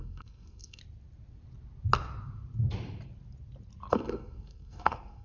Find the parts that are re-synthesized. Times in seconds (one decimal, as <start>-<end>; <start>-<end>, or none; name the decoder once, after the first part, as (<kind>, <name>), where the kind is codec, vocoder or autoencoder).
0.0-0.8 (codec, SNAC); 3.9-5.2